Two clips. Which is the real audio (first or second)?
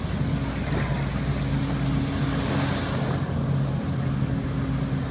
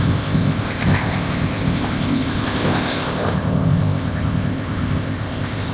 first